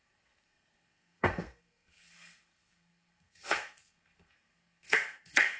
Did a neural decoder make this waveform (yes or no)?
yes